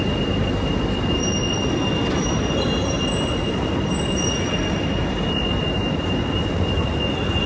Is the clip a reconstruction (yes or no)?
no